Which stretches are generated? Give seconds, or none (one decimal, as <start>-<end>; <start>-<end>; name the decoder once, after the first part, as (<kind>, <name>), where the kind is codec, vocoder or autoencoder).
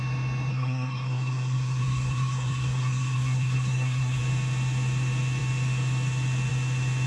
0.5-4.2 (codec, SNAC)